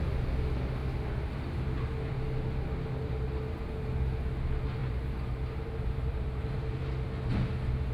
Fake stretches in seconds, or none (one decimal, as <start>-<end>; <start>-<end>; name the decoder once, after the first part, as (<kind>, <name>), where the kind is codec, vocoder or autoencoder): 0.8-2.1 (vocoder, BigVGAN v2); 4.8-6.9